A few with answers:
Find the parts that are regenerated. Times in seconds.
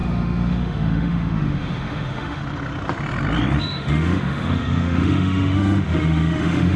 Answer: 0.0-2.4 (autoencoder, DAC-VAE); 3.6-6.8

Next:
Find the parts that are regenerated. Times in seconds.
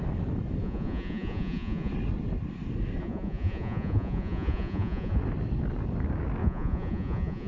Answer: 0.6-1.9 (vocoder, Vocos); 3.0-5.2; 6.4-7.5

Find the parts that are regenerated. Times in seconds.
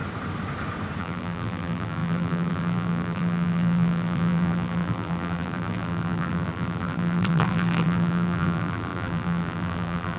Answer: 1.0-10.2 (vocoder, BigVGAN v2)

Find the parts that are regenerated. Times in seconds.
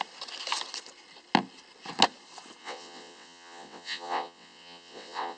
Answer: 2.6-5.4 (vocoder, WaveNeXt)